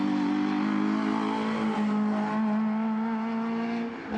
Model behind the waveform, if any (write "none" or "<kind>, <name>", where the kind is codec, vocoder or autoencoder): none